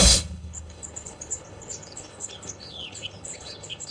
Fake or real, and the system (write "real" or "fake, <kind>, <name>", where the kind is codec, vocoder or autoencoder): fake, codec, HILCodec